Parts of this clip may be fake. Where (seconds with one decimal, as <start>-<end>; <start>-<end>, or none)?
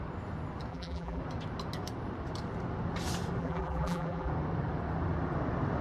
0.7-1.2; 3.4-4.3